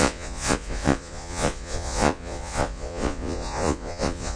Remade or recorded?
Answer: remade